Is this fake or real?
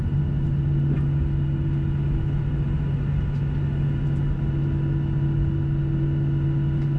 real